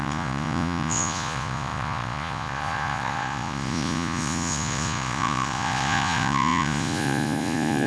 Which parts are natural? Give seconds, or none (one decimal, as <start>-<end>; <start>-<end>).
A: none